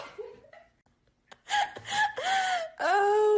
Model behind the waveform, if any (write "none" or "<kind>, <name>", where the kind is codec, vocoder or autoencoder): none